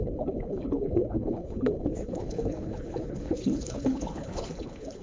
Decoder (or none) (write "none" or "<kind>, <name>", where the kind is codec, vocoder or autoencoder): codec, HILCodec